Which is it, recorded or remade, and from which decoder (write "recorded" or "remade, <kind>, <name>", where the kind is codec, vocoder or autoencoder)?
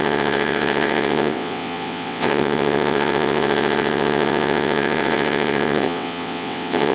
remade, vocoder, WaveNeXt